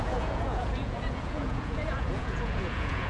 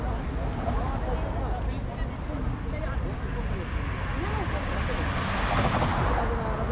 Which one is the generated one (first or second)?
first